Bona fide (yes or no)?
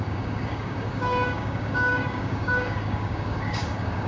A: no